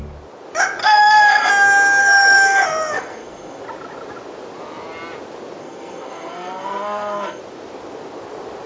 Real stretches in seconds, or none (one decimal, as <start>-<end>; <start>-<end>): 0.0-0.8; 1.5-2.0; 3.6-5.6; 7.4-8.7